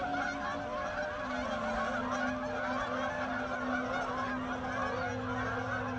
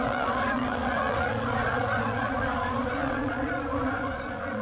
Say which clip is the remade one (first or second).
second